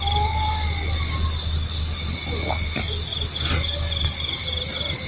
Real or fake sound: real